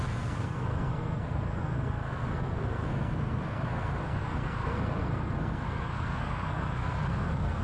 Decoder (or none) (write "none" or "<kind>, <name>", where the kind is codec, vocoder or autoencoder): codec, SNAC